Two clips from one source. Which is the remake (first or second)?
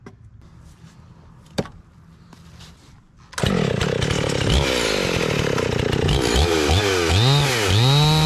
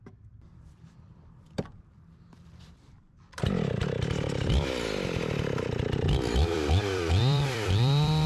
second